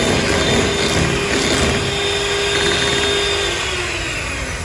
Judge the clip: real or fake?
real